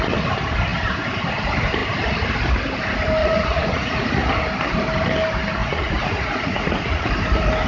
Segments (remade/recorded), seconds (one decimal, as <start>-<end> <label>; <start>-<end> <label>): 0.0-3.2 recorded; 3.2-4.3 remade; 4.3-5.6 recorded; 5.6-7.1 remade; 7.1-7.7 recorded